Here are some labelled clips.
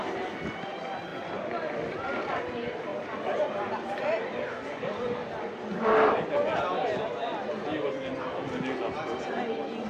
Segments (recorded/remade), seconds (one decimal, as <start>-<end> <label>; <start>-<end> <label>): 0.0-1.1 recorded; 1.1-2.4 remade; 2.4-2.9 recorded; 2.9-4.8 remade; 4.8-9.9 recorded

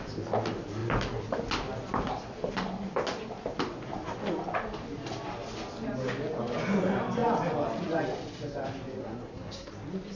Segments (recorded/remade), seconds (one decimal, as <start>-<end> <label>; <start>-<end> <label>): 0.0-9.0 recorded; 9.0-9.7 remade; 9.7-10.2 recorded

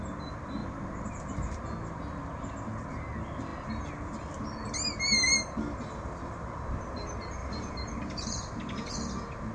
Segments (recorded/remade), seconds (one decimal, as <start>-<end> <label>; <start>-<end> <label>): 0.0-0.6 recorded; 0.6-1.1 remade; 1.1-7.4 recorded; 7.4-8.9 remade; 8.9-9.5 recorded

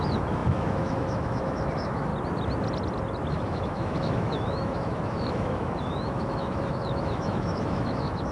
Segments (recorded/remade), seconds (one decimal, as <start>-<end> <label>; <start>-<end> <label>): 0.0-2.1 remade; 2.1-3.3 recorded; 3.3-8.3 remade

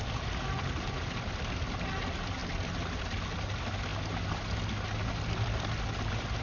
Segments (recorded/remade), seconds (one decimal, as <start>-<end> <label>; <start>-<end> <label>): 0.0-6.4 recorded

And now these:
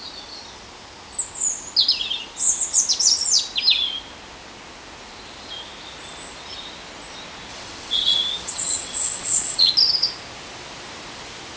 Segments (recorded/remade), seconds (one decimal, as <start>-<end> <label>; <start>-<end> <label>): 0.0-7.5 recorded; 7.5-9.7 remade; 9.7-11.6 recorded

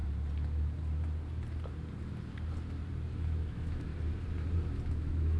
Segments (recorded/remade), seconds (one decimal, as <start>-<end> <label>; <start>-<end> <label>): 0.0-3.2 recorded; 3.2-3.9 remade; 3.9-4.9 recorded; 4.9-5.4 remade

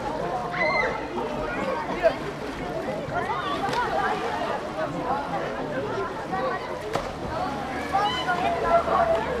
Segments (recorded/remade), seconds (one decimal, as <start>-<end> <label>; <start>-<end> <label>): 0.0-7.2 recorded; 7.2-7.8 remade; 7.8-9.4 recorded